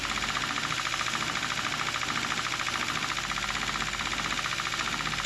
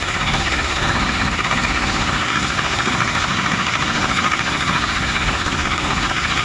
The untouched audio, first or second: first